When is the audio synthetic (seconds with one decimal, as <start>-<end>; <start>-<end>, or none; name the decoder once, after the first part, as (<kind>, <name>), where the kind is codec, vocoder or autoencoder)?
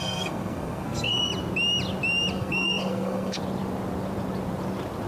0.0-1.3 (codec, SNAC); 2.3-3.4